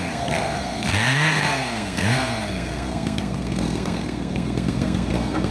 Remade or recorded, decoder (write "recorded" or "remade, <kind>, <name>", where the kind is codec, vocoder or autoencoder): remade, codec, SNAC